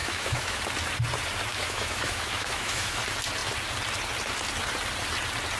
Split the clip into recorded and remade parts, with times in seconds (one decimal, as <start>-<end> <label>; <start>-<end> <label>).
0.0-0.6 remade; 0.6-1.5 recorded; 1.5-3.0 remade; 3.0-5.6 recorded